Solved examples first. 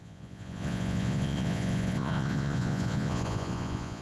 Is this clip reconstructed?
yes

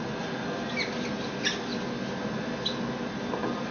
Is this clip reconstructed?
no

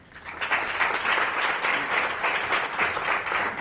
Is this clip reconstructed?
no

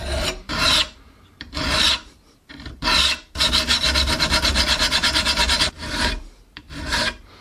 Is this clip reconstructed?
yes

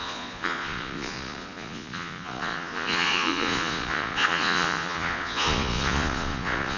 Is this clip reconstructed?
yes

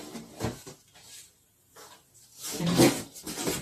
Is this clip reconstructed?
yes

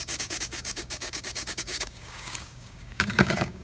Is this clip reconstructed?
yes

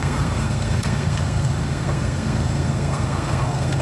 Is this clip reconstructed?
yes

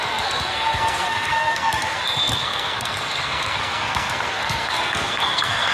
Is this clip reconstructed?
yes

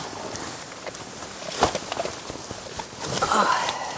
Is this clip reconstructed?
no